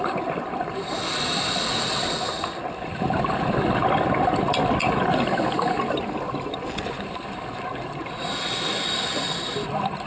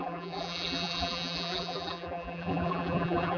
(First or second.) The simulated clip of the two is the second